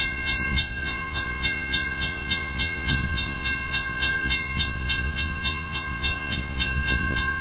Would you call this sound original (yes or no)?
no